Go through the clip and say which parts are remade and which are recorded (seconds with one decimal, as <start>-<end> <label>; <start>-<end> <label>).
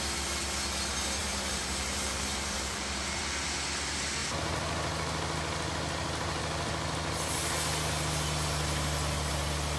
0.0-1.2 recorded; 1.2-3.2 remade; 3.2-9.8 recorded